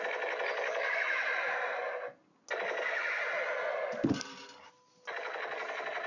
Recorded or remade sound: recorded